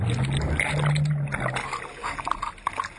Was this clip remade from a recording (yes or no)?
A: no